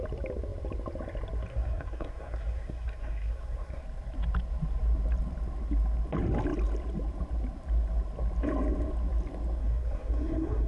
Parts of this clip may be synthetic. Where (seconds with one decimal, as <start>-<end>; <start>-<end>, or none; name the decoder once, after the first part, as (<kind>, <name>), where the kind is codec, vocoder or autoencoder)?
1.5-3.8 (codec, SNAC); 9.6-10.7